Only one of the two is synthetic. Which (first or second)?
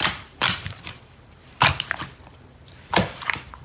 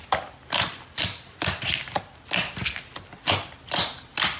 first